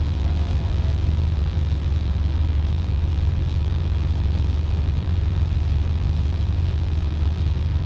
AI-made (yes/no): yes